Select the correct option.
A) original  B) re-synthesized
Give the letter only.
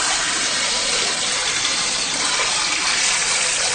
B